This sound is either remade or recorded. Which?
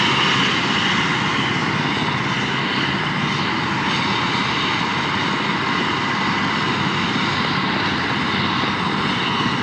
recorded